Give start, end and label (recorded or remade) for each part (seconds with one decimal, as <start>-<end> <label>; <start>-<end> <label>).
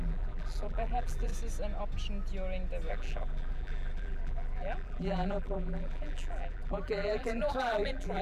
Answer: 0.0-1.3 remade; 1.3-2.9 recorded; 2.9-8.2 remade